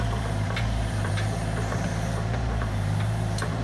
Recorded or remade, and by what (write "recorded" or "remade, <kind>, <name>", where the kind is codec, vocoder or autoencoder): remade, vocoder, BigVGAN v2